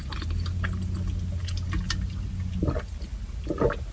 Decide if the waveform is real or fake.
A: real